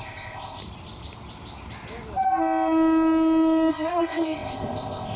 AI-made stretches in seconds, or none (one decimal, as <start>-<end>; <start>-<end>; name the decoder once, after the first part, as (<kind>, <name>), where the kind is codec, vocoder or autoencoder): 0.0-0.6 (codec, ZipCodec); 3.7-5.2